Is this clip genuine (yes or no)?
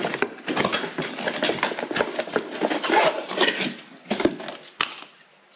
yes